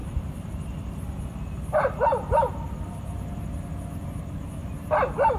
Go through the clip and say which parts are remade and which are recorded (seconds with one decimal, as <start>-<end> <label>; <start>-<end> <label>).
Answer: 0.0-0.5 remade; 0.5-5.4 recorded